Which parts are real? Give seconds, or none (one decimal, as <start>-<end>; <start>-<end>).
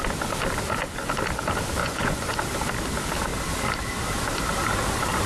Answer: 0.0-1.8; 2.4-5.3